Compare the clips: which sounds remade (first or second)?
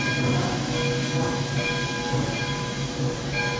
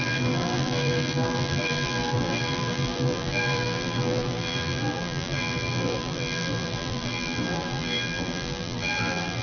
second